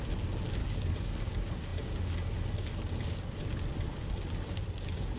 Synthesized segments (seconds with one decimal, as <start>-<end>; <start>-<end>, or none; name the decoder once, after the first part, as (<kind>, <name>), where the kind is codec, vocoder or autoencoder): 0.6-1.2 (codec, DAC)